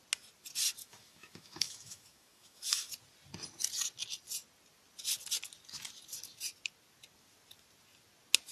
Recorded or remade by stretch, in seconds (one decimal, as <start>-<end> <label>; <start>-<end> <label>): 0.0-0.8 recorded; 0.8-2.9 remade; 2.9-8.5 recorded